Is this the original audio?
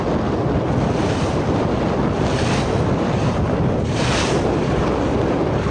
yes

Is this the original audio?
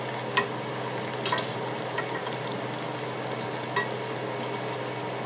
yes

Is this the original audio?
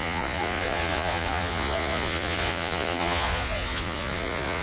no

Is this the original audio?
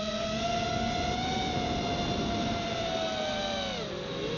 yes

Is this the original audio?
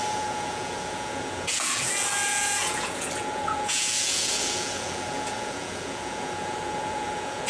no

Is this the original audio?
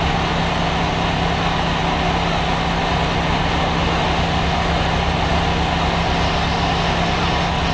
yes